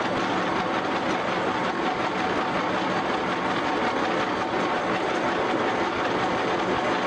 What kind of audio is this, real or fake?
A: real